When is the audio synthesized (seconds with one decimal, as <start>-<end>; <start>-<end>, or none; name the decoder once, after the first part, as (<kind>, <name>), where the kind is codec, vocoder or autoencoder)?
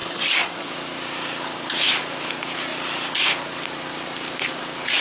0.0-0.7 (vocoder, HiFi-GAN)